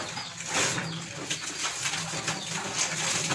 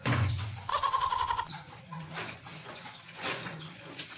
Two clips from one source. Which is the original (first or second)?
first